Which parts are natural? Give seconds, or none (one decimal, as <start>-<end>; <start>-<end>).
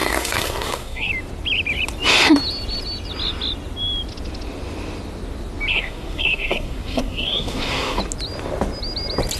1.1-5.7; 8.0-9.4